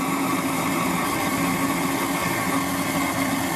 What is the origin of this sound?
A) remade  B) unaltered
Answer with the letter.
B